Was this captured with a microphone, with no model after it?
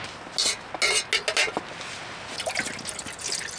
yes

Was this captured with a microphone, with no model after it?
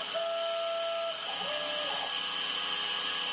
yes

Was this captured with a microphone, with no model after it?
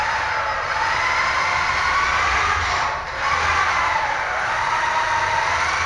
yes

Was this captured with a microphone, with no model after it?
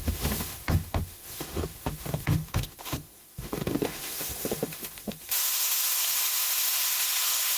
no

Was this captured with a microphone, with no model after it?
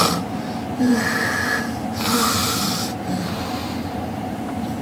yes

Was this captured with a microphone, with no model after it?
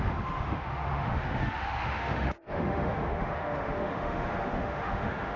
no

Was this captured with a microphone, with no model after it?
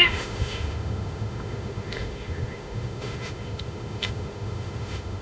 no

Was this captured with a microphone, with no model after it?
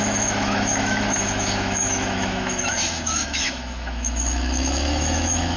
no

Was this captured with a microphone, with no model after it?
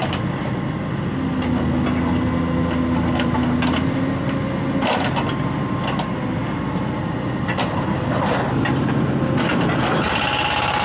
yes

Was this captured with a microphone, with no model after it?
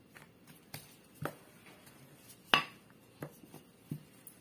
yes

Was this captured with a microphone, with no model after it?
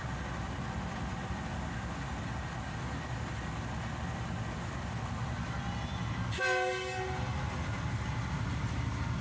yes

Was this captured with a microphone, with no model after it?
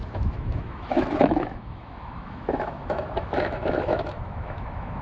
no